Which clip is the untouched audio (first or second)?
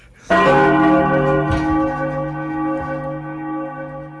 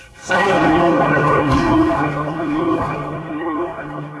first